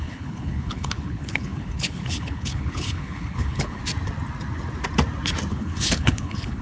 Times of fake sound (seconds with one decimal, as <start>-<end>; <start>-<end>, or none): 0.0-3.8; 5.5-6.6